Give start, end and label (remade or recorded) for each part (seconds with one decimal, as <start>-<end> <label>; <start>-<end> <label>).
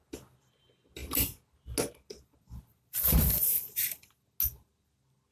0.0-2.7 recorded; 2.7-4.2 remade; 4.2-5.3 recorded